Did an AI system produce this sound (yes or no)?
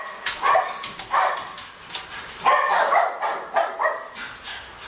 no